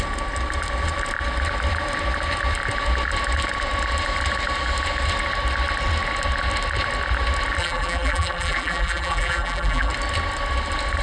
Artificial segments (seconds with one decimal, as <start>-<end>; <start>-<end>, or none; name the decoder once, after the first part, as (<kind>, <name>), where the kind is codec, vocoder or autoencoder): 7.6-9.9 (vocoder, BigVGAN v2)